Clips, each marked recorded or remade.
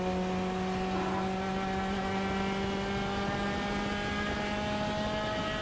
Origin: recorded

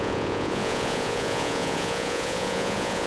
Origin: remade